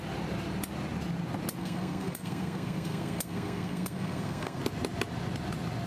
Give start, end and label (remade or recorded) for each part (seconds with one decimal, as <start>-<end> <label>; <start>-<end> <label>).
0.0-1.6 recorded; 1.6-4.6 remade; 4.6-5.9 recorded